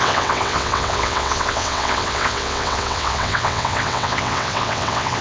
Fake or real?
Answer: fake